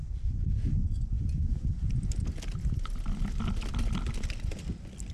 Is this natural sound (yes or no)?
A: yes